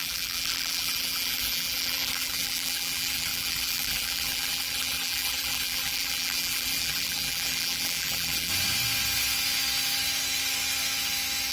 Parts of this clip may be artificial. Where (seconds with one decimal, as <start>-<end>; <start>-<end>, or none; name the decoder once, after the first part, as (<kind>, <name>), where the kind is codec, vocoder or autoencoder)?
0.0-8.5 (vocoder, BigVGAN v2)